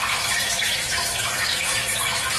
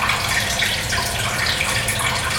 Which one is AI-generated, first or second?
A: first